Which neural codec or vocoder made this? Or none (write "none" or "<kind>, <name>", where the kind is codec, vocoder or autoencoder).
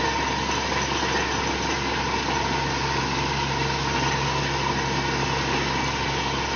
none